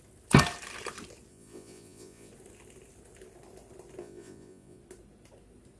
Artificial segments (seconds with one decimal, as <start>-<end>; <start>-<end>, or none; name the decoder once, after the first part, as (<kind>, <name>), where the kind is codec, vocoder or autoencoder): 1.3-2.3 (vocoder, Vocos); 4.0-4.8

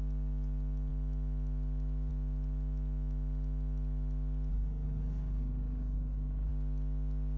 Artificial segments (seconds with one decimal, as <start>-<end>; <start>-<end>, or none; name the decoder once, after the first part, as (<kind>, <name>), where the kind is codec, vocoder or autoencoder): 4.5-6.5 (codec, HILCodec)

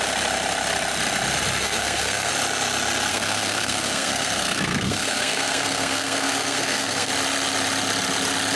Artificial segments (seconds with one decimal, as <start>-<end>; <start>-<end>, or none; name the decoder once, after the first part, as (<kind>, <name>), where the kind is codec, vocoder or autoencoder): 1.6-2.3 (codec, SNAC); 3.1-7.1

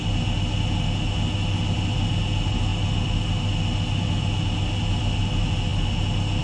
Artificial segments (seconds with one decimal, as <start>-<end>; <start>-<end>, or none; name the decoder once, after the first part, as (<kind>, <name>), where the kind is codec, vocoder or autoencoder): none